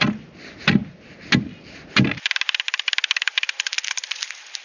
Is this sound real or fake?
real